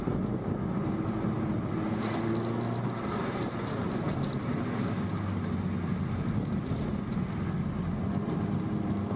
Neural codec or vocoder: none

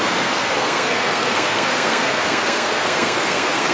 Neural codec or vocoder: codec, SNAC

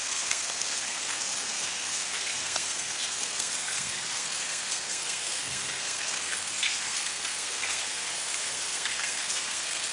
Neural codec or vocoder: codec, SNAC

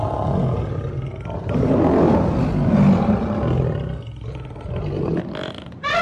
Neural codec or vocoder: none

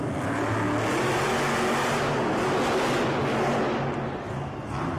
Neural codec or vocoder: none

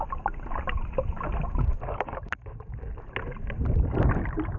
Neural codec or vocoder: none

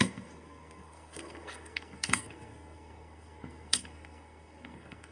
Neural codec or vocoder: codec, SNAC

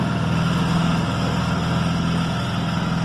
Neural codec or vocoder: none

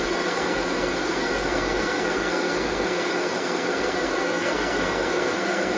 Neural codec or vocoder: codec, SNAC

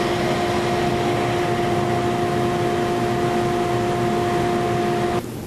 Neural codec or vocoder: none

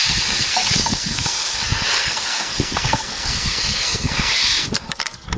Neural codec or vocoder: codec, SNAC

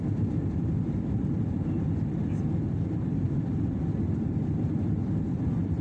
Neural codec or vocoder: none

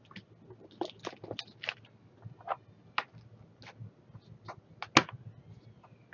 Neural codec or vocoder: none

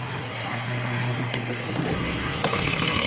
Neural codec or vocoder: codec, SNAC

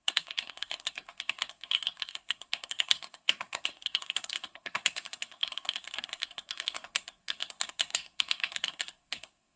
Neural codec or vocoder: codec, SNAC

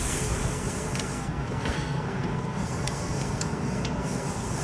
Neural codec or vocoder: codec, SNAC